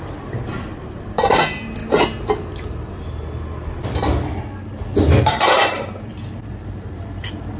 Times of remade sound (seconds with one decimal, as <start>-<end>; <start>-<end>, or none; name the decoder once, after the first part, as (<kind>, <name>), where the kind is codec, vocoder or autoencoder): 0.0-1.8 (vocoder, BigVGAN v2); 5.2-7.6

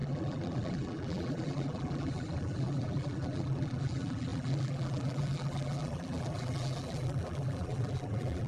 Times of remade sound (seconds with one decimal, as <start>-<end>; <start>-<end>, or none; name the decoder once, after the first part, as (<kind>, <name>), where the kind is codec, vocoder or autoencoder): 0.0-8.5 (vocoder, BigVGAN v2)

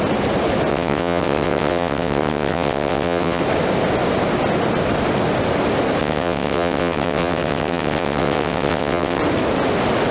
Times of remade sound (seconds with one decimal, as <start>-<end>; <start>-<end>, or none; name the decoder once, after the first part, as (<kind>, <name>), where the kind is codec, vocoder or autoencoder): 0.7-3.4 (vocoder, WaveNeXt); 6.0-9.2

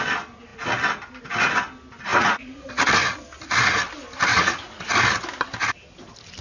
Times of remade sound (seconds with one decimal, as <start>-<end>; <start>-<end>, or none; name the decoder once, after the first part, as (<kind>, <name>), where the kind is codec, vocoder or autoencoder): 2.1-2.7 (vocoder, Vocos); 4.3-4.8

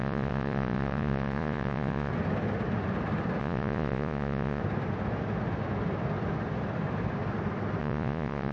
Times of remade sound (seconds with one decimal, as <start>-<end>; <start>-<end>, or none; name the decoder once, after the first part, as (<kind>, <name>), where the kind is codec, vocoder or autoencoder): 0.0-2.1 (vocoder, Vocos); 3.4-4.6; 7.8-8.5